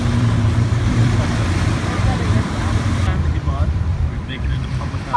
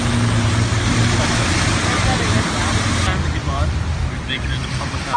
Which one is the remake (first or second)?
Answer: first